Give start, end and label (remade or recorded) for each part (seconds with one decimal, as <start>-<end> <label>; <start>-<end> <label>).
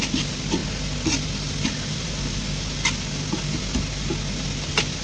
0.0-5.0 recorded